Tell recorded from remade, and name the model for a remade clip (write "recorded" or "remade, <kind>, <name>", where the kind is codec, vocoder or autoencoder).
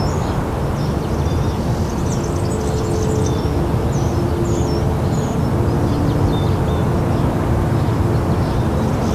recorded